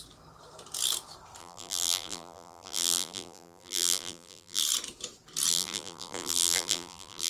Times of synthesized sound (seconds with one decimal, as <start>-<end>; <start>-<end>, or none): 1.4-4.6; 5.5-7.3